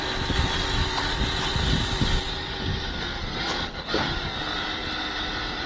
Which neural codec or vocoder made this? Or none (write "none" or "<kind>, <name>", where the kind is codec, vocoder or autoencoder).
vocoder, BigVGAN v2